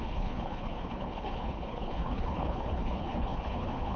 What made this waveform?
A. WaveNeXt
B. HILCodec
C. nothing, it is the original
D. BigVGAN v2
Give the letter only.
B